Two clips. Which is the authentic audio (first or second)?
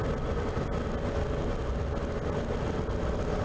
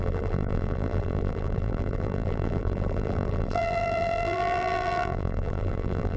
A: first